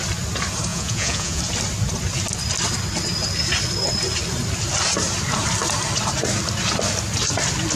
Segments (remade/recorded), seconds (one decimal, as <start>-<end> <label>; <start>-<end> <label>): 0.0-0.7 recorded; 0.7-1.4 remade; 1.4-7.8 recorded